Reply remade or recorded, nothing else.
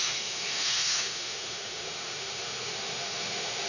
remade